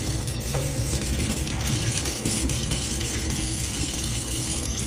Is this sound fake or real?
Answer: fake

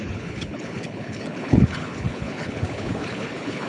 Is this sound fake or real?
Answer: fake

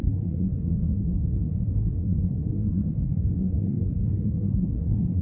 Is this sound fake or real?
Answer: fake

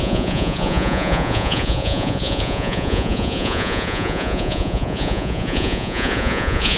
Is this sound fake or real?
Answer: fake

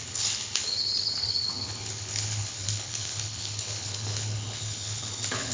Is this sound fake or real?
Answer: fake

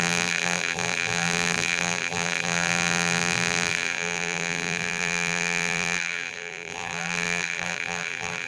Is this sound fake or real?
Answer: fake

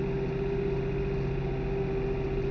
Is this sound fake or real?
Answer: real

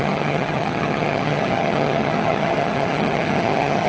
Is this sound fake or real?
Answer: fake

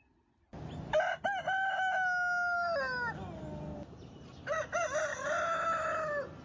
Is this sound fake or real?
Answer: real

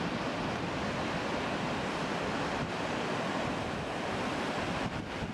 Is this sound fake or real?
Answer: real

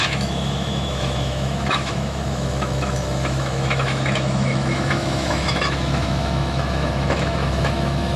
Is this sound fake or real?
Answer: fake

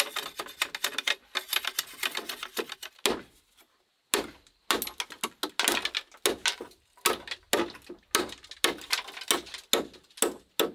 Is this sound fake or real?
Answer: real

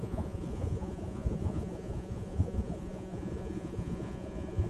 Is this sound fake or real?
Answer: fake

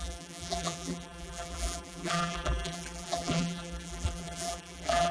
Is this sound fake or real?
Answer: fake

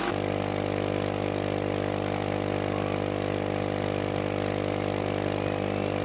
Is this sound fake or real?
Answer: real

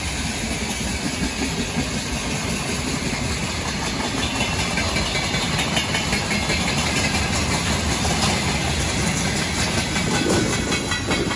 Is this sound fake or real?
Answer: real